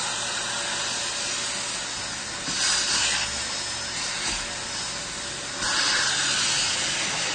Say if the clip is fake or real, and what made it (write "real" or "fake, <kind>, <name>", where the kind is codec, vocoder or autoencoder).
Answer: real